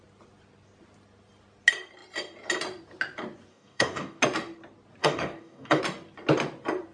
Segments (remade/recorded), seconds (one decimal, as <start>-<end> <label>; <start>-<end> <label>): 0.0-3.5 recorded; 3.5-4.2 remade; 4.2-5.0 recorded; 5.0-5.8 remade; 5.8-6.9 recorded